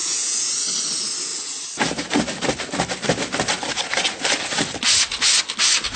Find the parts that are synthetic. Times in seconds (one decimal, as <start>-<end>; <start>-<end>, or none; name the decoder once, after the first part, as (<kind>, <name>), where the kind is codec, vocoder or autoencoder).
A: 0.0-0.5 (vocoder, Vocos)